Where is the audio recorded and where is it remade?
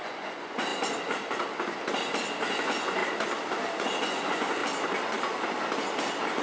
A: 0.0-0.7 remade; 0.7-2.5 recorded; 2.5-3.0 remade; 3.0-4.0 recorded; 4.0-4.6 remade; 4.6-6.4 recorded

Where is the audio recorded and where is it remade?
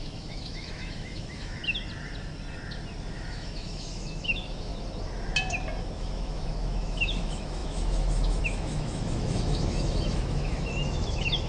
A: 0.0-1.6 remade; 1.6-3.3 recorded; 3.3-4.7 remade; 4.7-5.8 recorded; 5.8-11.5 remade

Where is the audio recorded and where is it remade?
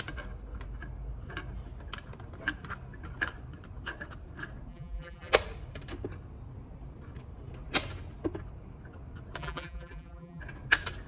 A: 0.0-4.7 recorded; 4.7-5.3 remade; 5.3-9.4 recorded; 9.4-10.4 remade; 10.4-11.1 recorded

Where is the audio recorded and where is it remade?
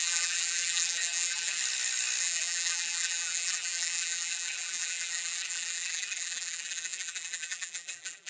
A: 0.0-1.6 remade; 1.6-2.2 recorded; 2.2-8.3 remade